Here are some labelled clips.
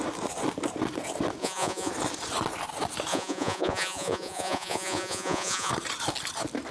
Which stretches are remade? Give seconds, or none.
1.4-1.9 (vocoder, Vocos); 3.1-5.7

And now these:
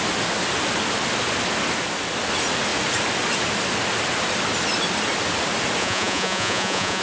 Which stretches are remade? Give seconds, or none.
5.8-7.0 (vocoder, Vocos)

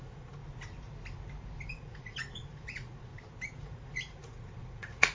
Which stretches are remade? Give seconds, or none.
0.0-0.4 (vocoder, Vocos); 1.7-3.1; 3.6-5.1